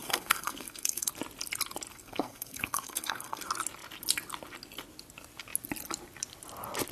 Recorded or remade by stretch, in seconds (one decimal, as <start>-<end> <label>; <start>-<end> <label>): 0.0-1.1 remade; 1.1-1.9 recorded; 1.9-3.4 remade; 3.4-6.9 recorded